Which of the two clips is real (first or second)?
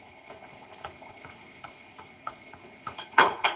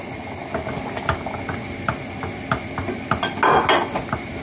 second